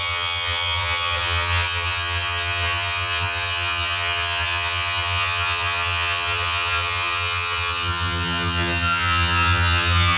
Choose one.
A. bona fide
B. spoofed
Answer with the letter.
B